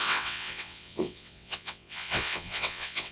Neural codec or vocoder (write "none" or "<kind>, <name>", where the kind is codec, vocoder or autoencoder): vocoder, WaveNeXt